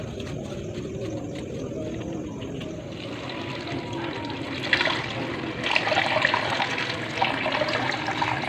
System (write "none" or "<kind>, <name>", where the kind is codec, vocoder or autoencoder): none